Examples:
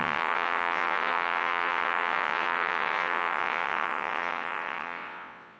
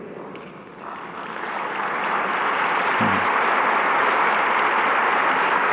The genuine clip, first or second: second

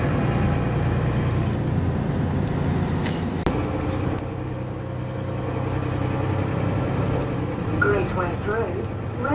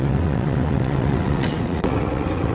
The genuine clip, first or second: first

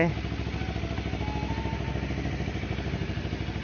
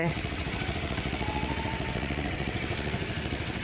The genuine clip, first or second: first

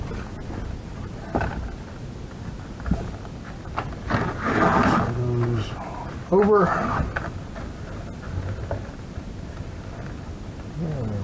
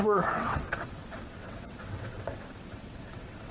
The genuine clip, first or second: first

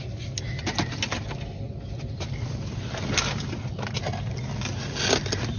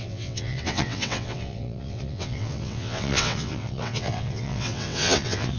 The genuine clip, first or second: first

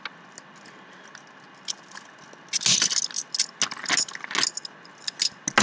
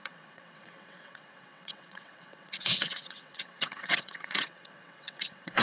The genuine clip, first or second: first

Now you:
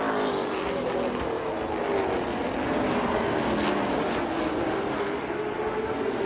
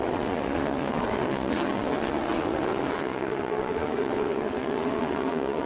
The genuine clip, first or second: first